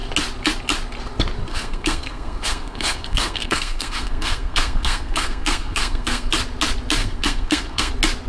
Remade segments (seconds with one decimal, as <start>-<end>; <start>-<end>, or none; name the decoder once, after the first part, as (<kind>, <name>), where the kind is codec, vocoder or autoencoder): 1.5-6.3 (codec, SNAC); 7.0-7.9